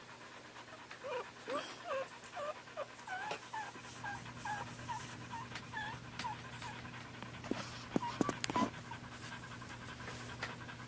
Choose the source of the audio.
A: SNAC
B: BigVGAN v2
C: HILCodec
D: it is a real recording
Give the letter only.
D